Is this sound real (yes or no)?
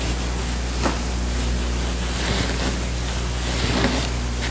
yes